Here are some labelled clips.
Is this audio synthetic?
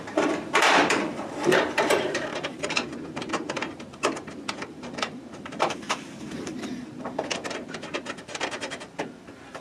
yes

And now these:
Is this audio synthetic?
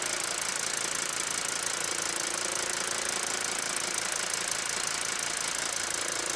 no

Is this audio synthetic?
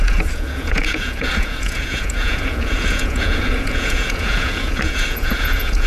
yes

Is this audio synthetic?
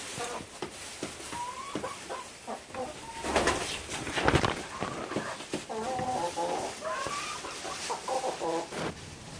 yes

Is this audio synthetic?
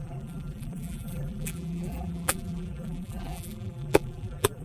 yes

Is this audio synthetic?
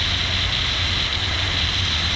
no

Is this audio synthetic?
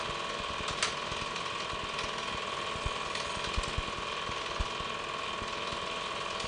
no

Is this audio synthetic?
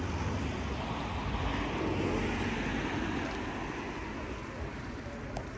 no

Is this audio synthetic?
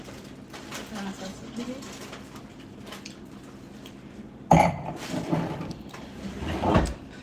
no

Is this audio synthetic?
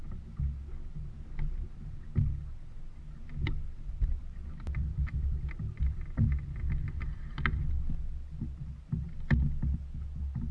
no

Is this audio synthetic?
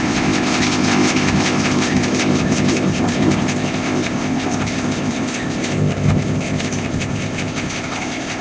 yes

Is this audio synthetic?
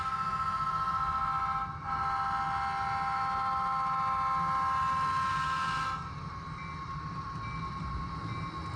no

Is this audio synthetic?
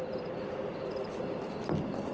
no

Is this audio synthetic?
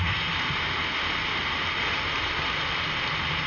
no